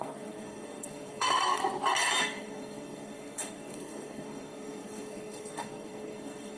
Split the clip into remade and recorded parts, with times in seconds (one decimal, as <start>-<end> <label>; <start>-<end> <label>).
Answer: 0.0-1.6 remade; 1.6-2.2 recorded; 2.2-6.6 remade